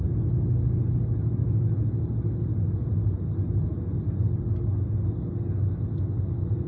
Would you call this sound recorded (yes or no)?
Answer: yes